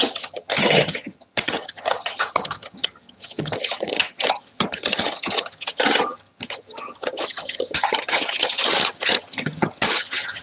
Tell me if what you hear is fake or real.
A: fake